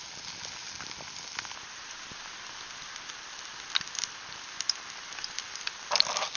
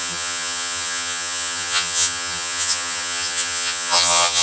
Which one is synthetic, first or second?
second